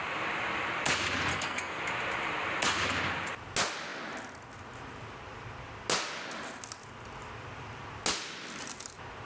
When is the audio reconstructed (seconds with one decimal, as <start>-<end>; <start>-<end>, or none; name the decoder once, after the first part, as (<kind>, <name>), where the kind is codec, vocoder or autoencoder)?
1.3-1.8 (codec, SNAC)